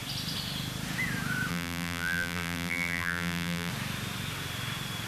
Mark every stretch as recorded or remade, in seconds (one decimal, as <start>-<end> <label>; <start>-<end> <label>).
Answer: 0.0-1.5 recorded; 1.5-3.7 remade; 3.7-5.1 recorded